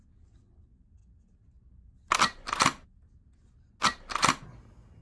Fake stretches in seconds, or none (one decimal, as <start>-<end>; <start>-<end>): none